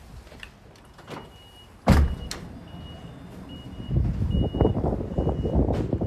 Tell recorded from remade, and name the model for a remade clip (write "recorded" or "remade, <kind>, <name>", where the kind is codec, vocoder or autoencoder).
recorded